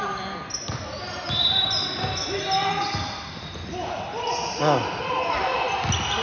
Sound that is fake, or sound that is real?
real